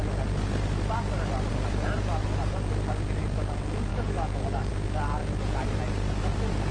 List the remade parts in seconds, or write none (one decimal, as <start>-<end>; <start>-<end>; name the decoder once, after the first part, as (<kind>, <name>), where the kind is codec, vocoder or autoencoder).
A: 3.9-4.7 (codec, DAC)